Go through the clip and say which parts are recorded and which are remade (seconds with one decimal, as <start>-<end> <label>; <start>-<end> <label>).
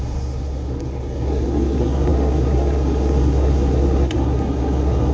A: 0.0-5.1 remade